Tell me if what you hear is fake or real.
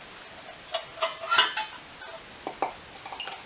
real